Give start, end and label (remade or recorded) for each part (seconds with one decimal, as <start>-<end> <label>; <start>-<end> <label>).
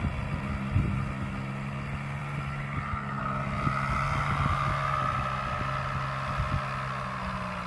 0.0-7.7 recorded